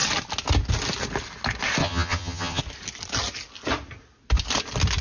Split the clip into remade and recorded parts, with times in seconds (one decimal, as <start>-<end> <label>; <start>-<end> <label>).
0.0-1.8 recorded; 1.8-2.6 remade; 2.6-5.0 recorded